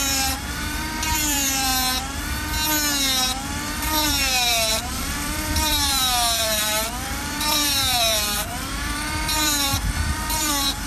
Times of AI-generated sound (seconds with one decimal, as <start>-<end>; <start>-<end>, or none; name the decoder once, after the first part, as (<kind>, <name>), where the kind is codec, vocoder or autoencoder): 0.0-1.7 (vocoder, BigVGAN v2); 3.7-10.9